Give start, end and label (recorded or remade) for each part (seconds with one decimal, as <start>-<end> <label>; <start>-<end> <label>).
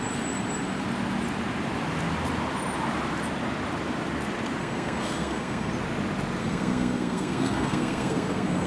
0.0-4.6 recorded; 4.6-5.7 remade; 5.7-6.4 recorded; 6.4-8.7 remade